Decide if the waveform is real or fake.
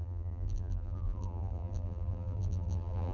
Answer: fake